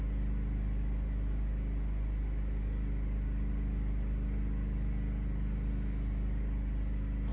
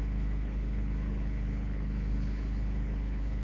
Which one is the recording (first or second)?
first